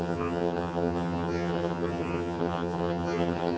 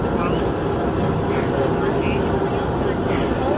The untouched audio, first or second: second